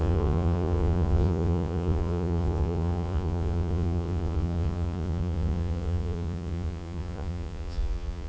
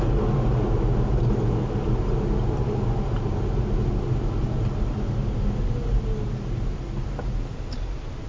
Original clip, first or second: second